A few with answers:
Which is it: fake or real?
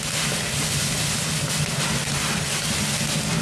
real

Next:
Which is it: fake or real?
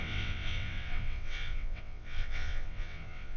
fake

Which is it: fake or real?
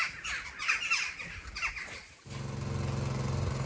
real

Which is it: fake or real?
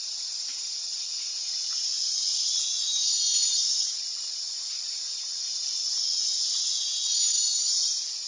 fake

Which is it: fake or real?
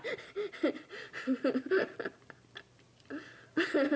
real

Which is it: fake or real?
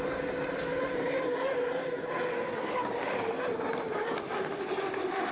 real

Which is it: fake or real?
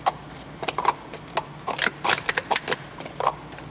real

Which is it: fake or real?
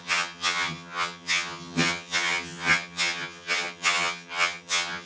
fake